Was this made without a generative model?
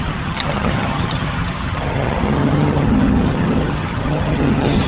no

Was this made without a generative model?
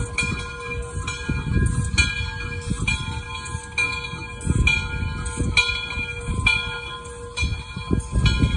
yes